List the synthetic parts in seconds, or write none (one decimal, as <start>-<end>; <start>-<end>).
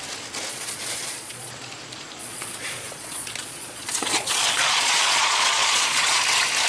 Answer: 0.5-1.5; 2.2-6.2